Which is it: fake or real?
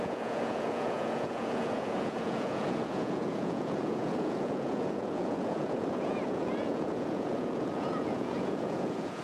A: fake